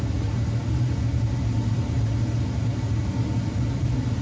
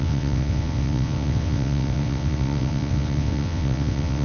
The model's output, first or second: second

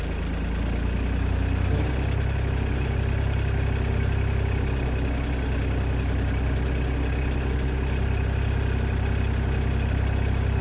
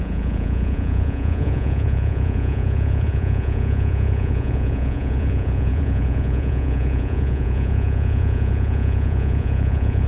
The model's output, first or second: second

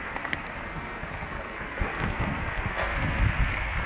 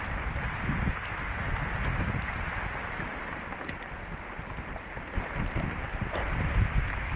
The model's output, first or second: first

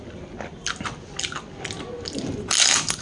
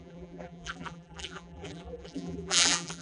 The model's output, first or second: second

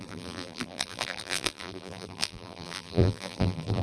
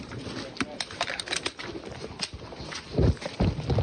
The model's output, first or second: first